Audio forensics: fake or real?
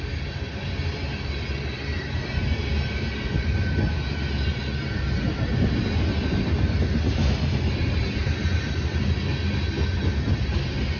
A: real